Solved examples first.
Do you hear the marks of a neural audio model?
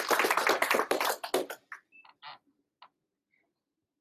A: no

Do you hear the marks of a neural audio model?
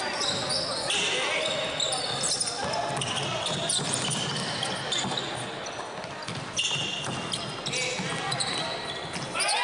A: no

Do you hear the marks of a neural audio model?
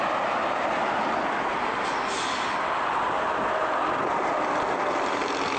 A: no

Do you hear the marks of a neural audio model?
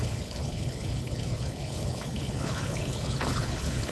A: yes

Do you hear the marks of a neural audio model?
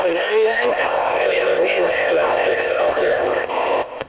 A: yes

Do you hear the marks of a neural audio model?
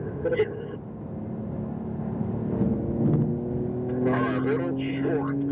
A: no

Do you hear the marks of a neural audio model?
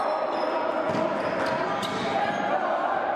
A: no